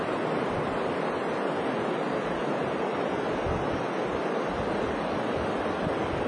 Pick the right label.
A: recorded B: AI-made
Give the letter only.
A